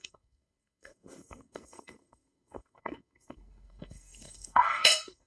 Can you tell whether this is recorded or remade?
remade